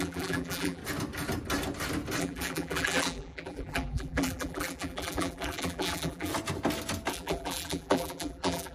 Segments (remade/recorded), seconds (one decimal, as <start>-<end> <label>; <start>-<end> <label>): 0.0-0.8 remade; 0.8-2.2 recorded; 2.2-6.3 remade; 6.3-7.1 recorded; 7.1-8.7 remade